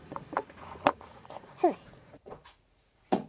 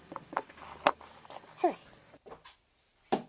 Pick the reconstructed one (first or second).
first